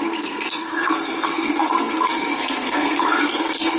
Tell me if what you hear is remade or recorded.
remade